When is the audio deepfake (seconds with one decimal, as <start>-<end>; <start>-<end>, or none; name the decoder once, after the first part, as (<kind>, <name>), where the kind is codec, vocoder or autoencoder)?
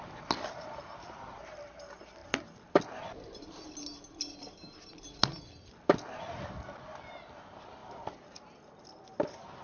none